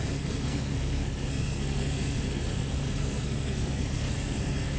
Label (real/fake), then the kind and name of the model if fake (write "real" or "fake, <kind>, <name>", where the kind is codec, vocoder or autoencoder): fake, codec, SNAC